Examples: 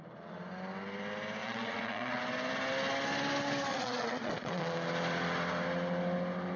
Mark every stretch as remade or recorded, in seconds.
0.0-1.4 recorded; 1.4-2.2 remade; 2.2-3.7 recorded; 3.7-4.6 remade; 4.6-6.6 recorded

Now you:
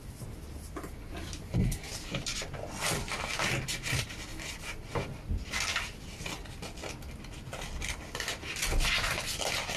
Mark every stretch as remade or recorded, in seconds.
0.0-9.8 recorded

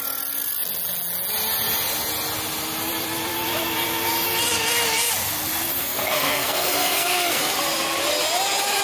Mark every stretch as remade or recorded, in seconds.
0.0-5.8 recorded; 5.8-7.4 remade; 7.4-8.8 recorded

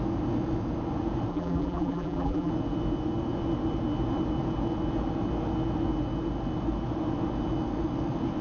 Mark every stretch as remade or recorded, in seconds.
0.0-1.3 recorded; 1.3-2.5 remade; 2.5-8.4 recorded

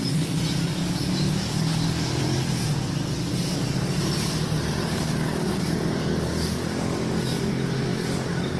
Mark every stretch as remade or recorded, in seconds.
0.0-0.8 recorded; 0.8-2.2 remade; 2.2-4.8 recorded; 4.8-7.5 remade; 7.5-7.9 recorded; 7.9-8.6 remade

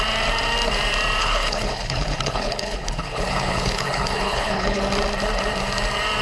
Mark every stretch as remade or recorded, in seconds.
0.0-1.2 recorded; 1.2-4.8 remade; 4.8-6.2 recorded

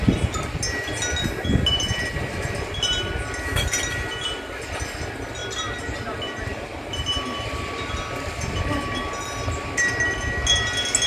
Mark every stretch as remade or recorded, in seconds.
0.0-11.1 recorded

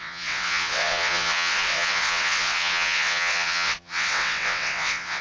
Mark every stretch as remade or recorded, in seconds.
0.0-5.2 remade